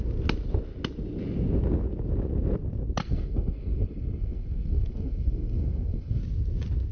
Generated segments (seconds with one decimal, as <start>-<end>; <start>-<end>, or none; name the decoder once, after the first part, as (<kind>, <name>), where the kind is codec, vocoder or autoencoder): 3.0-6.2 (codec, SNAC)